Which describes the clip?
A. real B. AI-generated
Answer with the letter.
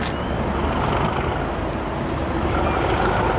A